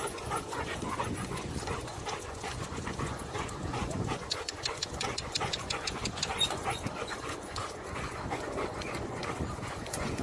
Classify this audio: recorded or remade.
remade